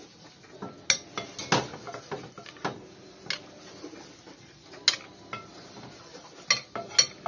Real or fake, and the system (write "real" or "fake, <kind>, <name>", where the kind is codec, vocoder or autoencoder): real